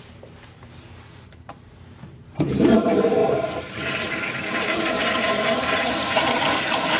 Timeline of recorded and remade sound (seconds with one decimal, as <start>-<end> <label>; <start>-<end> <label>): 0.0-7.0 remade